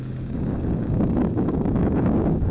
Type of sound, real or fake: fake